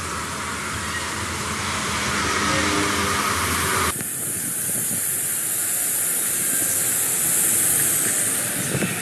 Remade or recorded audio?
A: recorded